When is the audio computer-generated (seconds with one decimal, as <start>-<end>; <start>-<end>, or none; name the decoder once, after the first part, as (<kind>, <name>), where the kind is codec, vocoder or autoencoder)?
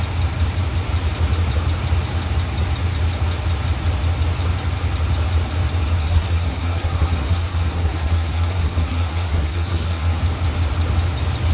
6.0-10.2 (codec, SNAC)